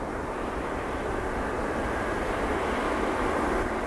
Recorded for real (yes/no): yes